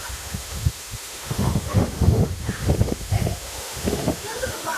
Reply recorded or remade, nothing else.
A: remade